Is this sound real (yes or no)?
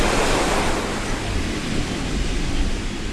yes